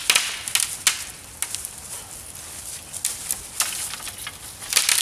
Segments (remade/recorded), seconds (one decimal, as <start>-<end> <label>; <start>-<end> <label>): 0.0-5.0 recorded